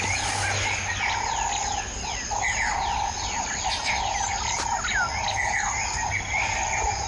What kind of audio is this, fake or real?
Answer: real